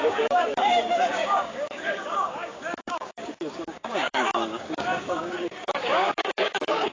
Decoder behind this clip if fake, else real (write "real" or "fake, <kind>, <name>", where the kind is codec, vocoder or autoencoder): fake, codec, DAC